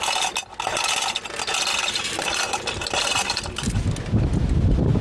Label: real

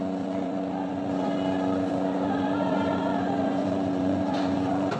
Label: fake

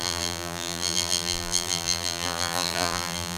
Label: fake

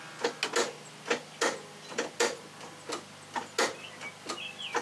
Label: real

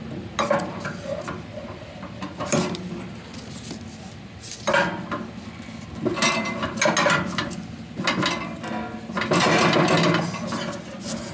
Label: real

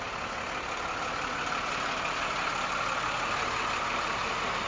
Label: real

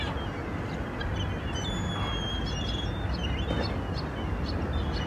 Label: real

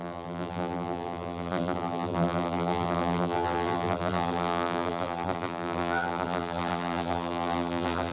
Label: fake